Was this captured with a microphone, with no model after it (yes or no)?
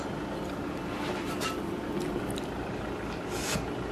yes